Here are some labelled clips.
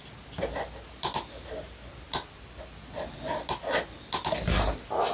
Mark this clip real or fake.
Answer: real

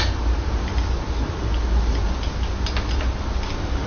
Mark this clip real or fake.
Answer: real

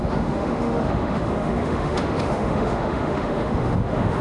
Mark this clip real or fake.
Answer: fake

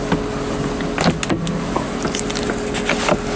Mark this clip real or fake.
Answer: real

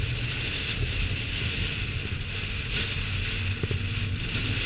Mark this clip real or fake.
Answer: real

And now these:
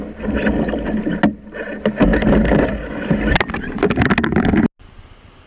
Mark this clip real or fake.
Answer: real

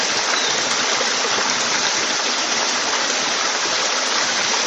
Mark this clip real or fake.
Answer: real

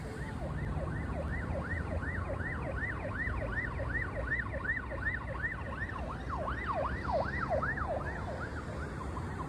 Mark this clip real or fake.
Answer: real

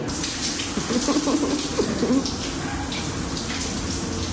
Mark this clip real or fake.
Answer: real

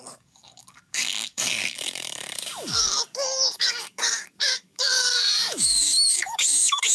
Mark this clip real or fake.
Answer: fake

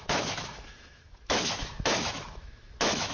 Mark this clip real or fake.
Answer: fake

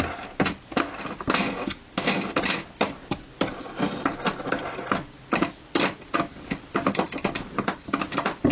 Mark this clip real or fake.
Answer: real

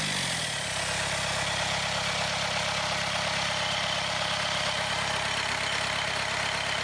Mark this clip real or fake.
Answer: real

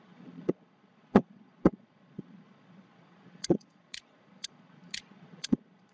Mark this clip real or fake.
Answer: fake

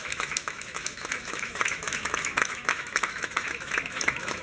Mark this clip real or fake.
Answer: fake